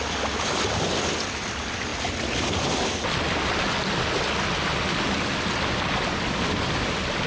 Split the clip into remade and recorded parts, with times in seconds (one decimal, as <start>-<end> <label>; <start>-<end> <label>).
0.0-7.3 recorded